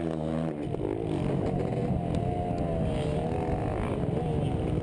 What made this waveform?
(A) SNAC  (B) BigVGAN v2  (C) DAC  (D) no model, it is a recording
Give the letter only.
D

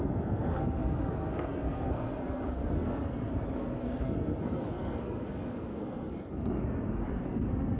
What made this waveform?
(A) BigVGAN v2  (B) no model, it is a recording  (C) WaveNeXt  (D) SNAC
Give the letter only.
D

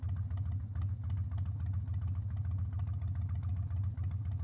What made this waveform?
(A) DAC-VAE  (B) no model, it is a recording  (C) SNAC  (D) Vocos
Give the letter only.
B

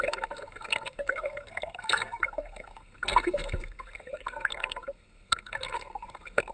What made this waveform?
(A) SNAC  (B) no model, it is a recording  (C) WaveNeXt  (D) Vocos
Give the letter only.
A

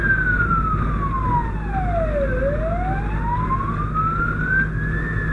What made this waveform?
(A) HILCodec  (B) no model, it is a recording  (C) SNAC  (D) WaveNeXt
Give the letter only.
B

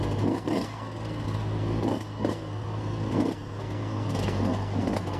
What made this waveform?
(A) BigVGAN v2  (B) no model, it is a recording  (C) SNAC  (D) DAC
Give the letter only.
C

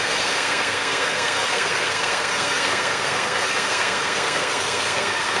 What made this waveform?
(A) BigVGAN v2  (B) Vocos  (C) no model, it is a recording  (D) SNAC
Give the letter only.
D